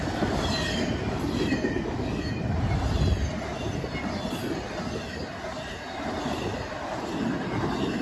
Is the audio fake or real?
real